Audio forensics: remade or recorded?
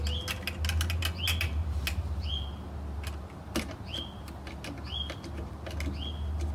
recorded